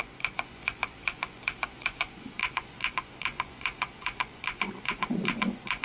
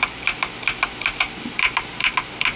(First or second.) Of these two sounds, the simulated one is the first